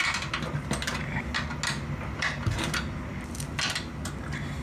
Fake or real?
real